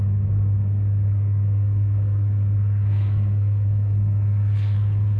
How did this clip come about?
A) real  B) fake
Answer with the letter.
B